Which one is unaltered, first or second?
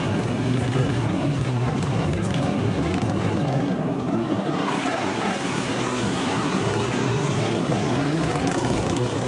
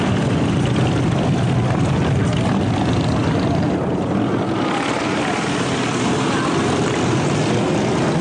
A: second